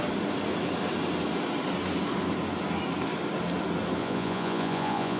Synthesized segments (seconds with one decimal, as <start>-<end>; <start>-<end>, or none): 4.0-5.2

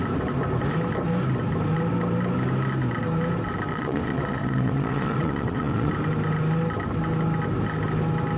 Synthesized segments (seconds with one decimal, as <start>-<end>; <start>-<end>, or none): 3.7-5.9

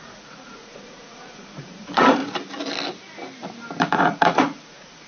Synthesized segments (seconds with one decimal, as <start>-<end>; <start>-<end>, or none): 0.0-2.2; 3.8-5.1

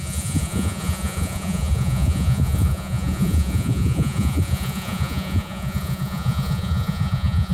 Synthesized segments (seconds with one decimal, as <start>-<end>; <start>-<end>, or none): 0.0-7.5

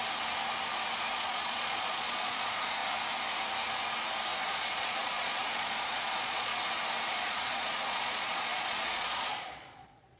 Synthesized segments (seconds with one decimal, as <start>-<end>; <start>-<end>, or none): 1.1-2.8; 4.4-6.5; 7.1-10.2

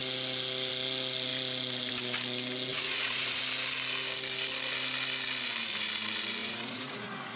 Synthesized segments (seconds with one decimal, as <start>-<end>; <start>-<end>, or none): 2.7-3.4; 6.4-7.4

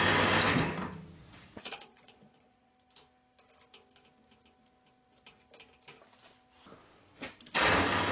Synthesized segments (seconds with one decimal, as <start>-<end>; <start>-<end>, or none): 1.2-2.7; 6.8-7.3

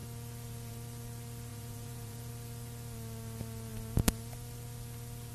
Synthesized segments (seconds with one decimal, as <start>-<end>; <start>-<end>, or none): 1.5-2.3